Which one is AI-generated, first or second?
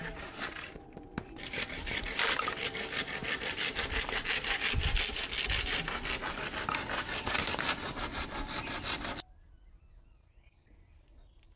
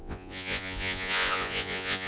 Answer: second